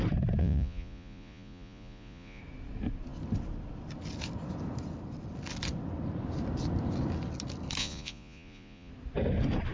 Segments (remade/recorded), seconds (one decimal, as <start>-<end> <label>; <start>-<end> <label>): 0.0-0.4 recorded; 0.4-2.4 remade; 2.4-7.8 recorded; 7.8-8.9 remade; 8.9-9.7 recorded